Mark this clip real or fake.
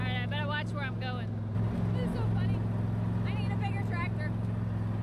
real